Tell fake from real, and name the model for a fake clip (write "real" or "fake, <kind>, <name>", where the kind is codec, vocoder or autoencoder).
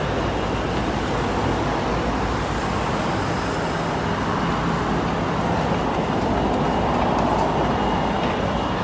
real